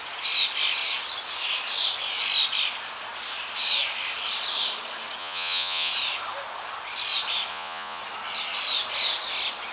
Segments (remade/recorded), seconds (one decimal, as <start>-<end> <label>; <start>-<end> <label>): 0.0-5.2 recorded; 5.2-5.9 remade; 5.9-7.5 recorded; 7.5-8.0 remade; 8.0-9.7 recorded